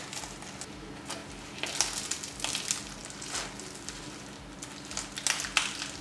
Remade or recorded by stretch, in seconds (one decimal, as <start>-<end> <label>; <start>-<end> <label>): 0.0-6.0 recorded